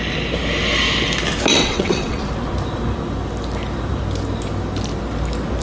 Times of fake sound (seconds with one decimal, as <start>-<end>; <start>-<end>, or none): 1.5-2.2